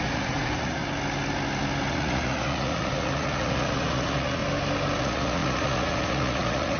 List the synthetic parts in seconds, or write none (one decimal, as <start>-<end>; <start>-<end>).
0.0-0.8; 1.9-4.4; 5.0-6.8